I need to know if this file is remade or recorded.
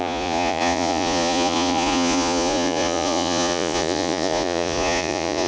remade